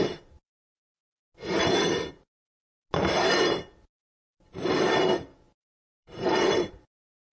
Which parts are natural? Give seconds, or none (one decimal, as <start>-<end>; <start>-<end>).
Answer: 0.0-5.8